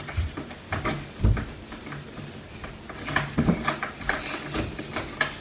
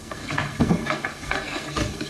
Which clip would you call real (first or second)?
first